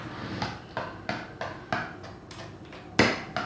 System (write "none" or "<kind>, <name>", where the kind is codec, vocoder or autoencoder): none